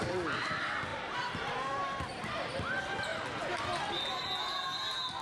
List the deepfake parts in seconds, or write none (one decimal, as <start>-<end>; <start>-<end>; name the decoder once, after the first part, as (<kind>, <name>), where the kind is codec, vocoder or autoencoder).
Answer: 0.9-2.5 (vocoder, BigVGAN v2)